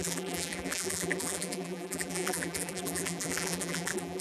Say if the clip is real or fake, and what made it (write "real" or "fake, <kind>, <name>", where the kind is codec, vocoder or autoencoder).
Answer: fake, vocoder, BigVGAN v2